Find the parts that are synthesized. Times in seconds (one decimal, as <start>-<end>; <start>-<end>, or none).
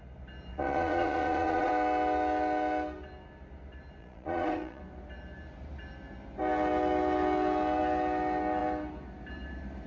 0.5-1.7; 4.0-4.8